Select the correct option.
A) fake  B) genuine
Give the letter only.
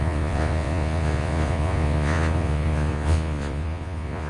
A